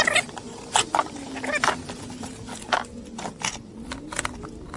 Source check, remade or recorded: recorded